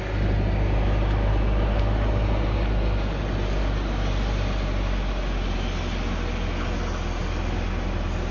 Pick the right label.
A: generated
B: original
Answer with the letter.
B